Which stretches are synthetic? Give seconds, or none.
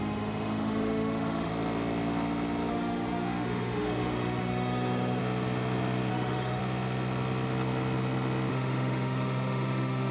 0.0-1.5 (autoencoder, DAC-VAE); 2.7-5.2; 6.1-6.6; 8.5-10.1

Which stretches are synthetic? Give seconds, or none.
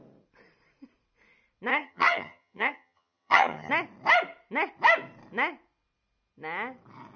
1.7-3.7 (vocoder, HiFi-GAN)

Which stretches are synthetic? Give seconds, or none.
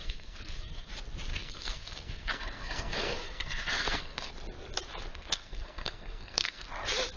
0.0-0.9 (codec, SNAC); 1.3-4.3; 5.1-6.7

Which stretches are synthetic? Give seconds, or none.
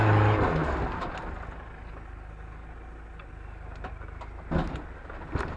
none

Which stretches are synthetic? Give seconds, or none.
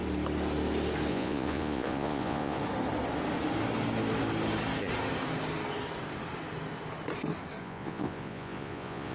1.1-2.6 (vocoder, Vocos); 7.6-9.1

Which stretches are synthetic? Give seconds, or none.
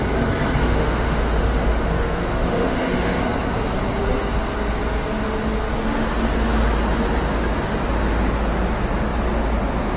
0.6-3.2 (autoencoder, DAC-VAE)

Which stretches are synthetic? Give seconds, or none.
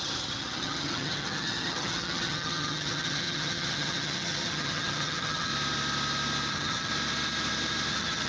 0.0-5.5 (vocoder, HiFi-GAN); 6.5-6.9; 7.9-8.3